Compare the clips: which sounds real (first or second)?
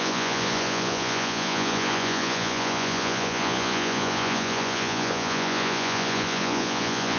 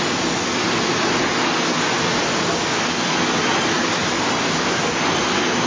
second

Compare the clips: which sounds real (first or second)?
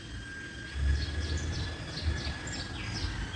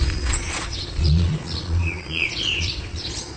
first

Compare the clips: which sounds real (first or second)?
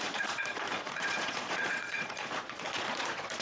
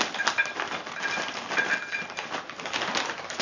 second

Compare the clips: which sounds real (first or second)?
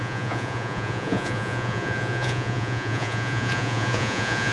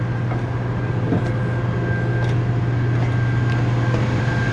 second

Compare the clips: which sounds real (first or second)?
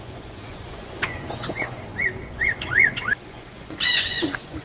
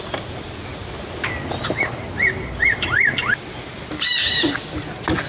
second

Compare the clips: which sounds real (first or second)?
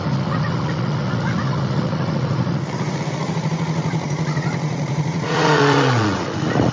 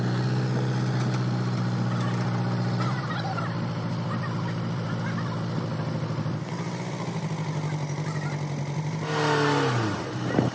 second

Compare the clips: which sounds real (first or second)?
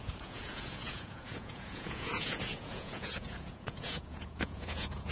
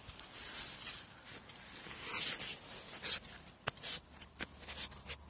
second